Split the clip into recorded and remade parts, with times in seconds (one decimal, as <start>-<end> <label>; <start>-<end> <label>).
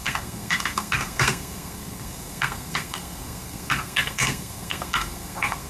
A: 0.0-5.7 remade